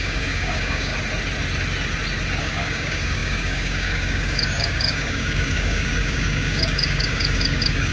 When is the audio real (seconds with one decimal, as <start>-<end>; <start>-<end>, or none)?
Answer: 0.9-2.4